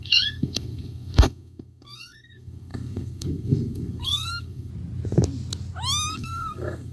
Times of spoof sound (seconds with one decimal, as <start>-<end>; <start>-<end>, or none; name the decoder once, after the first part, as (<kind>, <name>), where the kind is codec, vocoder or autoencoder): 0.0-4.7 (codec, SNAC); 6.1-6.9